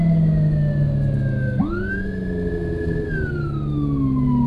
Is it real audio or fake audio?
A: real